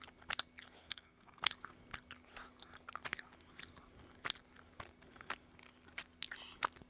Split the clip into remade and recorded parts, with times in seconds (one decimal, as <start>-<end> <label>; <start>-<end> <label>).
0.0-0.8 recorded; 0.8-1.4 remade; 1.4-6.9 recorded